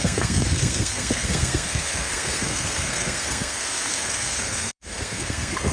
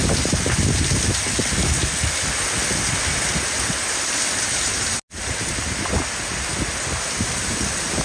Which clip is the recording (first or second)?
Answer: second